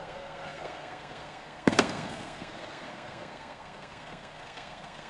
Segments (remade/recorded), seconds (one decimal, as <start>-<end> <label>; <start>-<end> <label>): 0.0-5.1 remade